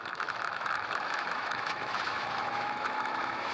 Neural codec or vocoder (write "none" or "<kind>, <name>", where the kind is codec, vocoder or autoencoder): autoencoder, DAC-VAE